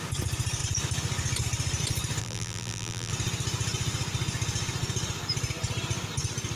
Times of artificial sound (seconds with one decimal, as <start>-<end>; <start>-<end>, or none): 2.2-3.1